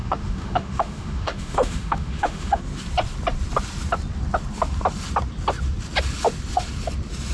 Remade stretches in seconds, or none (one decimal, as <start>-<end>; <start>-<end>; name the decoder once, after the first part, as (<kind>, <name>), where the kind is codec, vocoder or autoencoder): 0.0-2.6 (autoencoder, DAC-VAE)